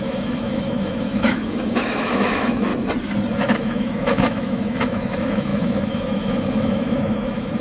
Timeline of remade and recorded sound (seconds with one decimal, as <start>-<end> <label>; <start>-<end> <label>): 0.0-2.7 remade; 2.7-3.3 recorded; 3.3-7.6 remade

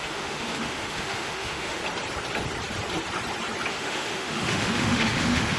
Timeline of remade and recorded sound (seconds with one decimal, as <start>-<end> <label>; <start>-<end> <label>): 0.0-1.8 remade; 1.8-3.7 recorded; 3.7-5.6 remade

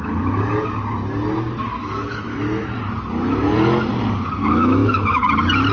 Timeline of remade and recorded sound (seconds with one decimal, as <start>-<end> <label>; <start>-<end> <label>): 0.0-1.8 recorded; 1.8-2.8 remade; 2.8-4.4 recorded; 4.4-5.3 remade; 5.3-5.7 recorded

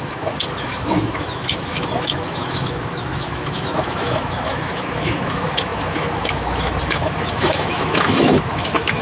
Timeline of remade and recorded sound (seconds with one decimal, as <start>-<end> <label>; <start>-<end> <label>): 0.0-9.0 remade

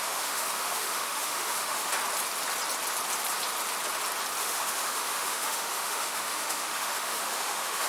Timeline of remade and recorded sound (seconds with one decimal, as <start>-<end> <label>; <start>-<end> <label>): 0.0-1.9 remade; 1.9-4.4 recorded; 4.4-7.9 remade

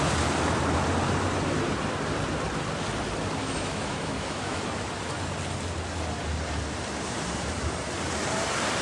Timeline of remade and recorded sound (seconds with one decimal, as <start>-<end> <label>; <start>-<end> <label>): 0.0-3.4 recorded; 3.4-4.6 remade; 4.6-8.8 recorded

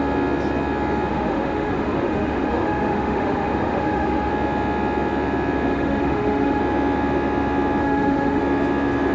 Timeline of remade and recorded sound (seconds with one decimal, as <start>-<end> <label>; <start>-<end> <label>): 0.0-1.1 recorded; 1.1-4.3 remade; 4.3-5.7 recorded; 5.7-6.6 remade; 6.6-7.8 recorded; 7.8-8.4 remade; 8.4-9.1 recorded